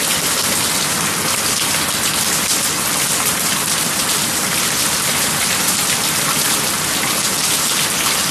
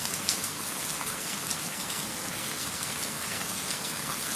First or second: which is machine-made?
second